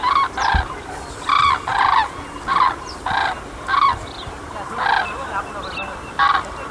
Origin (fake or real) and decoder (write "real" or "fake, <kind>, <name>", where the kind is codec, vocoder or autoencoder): real